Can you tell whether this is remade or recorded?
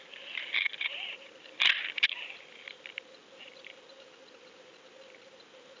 recorded